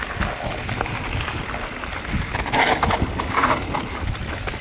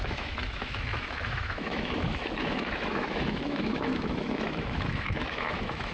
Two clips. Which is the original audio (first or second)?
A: first